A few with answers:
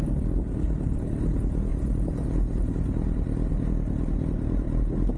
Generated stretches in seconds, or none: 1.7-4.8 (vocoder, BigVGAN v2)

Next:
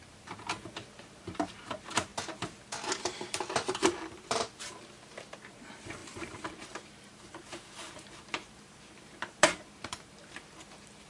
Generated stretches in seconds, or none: 0.0-2.1 (vocoder, BigVGAN v2); 3.0-11.1

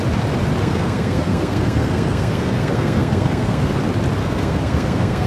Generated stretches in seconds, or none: 0.6-3.8 (codec, SNAC); 4.2-5.3

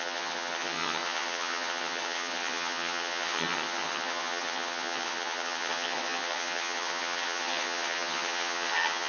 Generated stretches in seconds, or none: 0.0-9.1 (vocoder, HiFi-GAN)

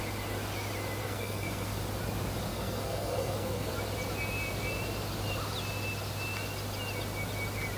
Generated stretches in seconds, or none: 1.0-1.8 (codec, SNAC); 2.5-3.7

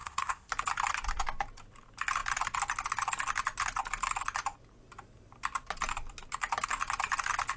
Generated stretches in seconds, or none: 0.0-0.5 (codec, ZipCodec)

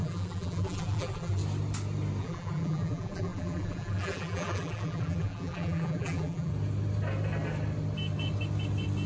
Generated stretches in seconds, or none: 0.0-1.4 (vocoder, BigVGAN v2); 2.2-6.5

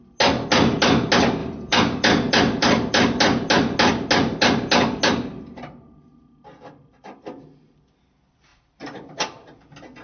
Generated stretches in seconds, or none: 1.4-3.2 (vocoder, BigVGAN v2); 8.5-10.0